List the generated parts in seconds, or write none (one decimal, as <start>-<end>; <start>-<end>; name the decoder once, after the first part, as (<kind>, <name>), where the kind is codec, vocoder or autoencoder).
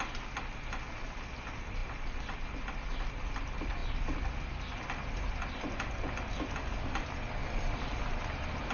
1.8-2.9 (vocoder, BigVGAN v2); 7.4-8.7